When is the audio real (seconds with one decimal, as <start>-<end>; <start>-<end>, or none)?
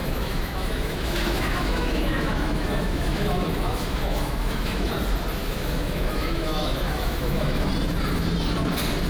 4.9-5.4; 7.7-9.1